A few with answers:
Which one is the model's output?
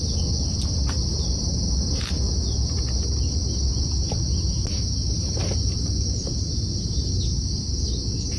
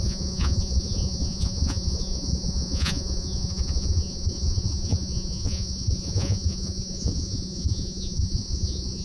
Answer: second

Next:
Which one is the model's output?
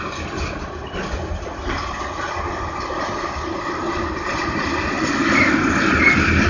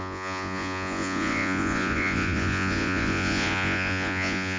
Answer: second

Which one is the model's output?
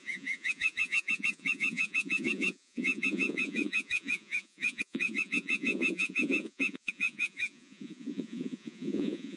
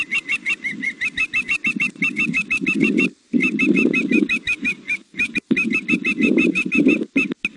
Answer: first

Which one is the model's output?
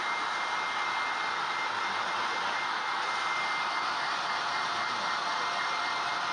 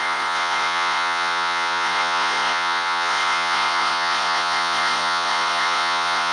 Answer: second